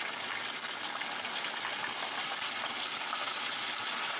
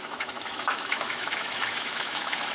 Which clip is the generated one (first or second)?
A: second